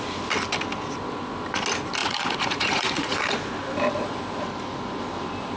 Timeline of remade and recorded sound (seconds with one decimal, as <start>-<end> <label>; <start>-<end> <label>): 0.0-2.0 recorded; 2.0-3.2 remade; 3.2-5.6 recorded